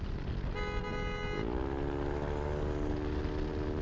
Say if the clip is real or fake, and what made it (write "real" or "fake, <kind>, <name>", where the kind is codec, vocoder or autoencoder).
real